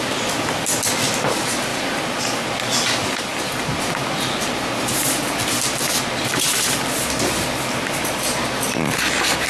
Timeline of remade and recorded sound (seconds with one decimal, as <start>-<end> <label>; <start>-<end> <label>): 0.0-9.5 recorded